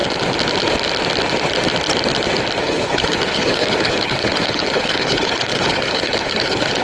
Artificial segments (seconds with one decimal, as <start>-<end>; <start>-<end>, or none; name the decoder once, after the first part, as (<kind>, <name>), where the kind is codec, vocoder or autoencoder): 2.6-6.8 (codec, HILCodec)